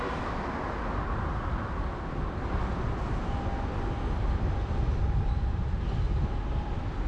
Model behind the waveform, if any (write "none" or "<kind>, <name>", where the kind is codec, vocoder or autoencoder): none